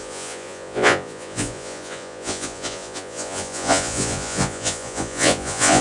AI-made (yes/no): yes